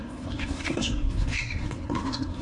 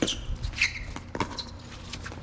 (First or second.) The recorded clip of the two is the second